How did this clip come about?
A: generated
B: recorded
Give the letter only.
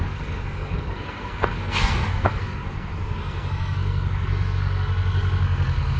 A